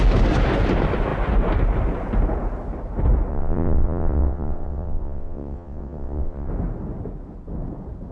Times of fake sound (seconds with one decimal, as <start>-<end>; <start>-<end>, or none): 3.3-6.5